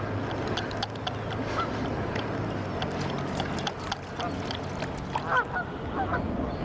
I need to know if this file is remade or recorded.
recorded